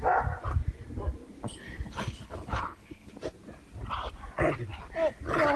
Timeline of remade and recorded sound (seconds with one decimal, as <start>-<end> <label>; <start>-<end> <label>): 0.0-1.5 recorded; 1.5-3.1 remade; 3.1-5.6 recorded

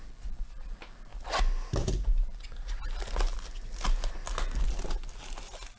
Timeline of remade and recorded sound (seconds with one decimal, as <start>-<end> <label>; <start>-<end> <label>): 0.0-5.8 recorded

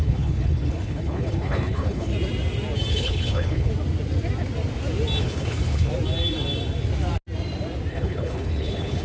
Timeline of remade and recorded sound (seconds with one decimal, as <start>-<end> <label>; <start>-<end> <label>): 0.0-2.1 remade; 2.1-2.9 recorded; 2.9-3.7 remade; 3.7-5.2 recorded; 5.2-5.9 remade; 5.9-7.9 recorded; 7.9-9.0 remade

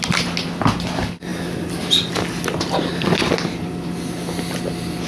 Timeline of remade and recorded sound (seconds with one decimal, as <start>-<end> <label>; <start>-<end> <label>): 0.0-5.1 recorded

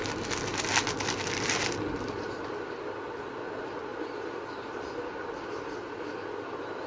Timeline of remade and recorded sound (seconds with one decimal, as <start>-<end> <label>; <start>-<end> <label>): 0.0-6.9 recorded